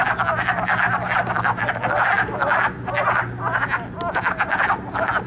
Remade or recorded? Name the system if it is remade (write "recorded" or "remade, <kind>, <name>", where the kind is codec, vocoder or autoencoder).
recorded